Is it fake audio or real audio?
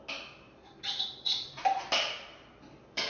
real